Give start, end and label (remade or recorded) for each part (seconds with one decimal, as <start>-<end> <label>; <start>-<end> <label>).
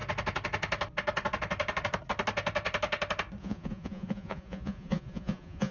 0.0-3.4 recorded; 3.4-5.7 remade